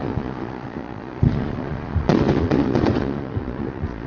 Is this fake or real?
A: fake